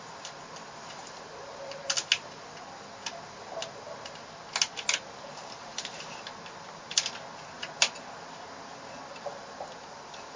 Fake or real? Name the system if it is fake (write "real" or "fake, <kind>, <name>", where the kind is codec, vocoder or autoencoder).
real